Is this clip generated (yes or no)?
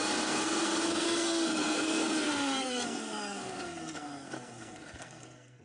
yes